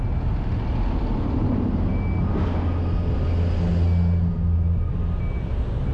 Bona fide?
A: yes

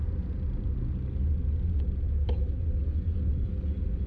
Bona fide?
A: yes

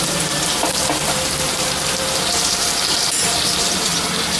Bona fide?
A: no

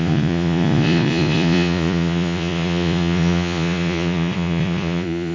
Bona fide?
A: no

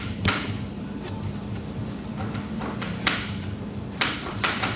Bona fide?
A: no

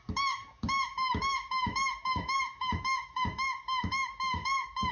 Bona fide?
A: no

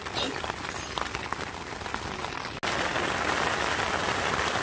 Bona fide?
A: yes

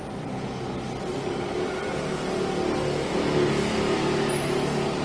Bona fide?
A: yes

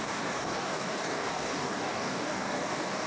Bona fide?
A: no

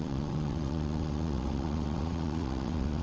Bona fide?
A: no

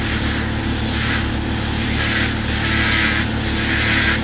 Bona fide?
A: yes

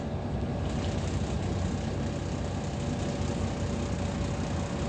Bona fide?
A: yes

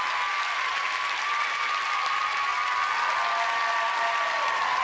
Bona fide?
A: yes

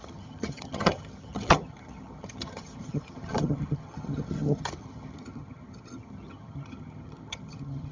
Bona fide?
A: no